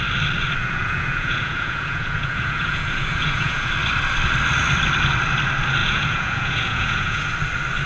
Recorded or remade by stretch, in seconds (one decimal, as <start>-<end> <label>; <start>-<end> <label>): 0.0-0.6 recorded; 0.6-3.7 remade; 3.7-5.8 recorded; 5.8-7.3 remade; 7.3-7.9 recorded